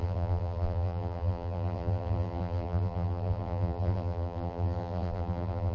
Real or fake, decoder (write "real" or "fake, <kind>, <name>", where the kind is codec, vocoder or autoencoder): fake, vocoder, BigVGAN v2